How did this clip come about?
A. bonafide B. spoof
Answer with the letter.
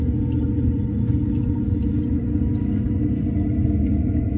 A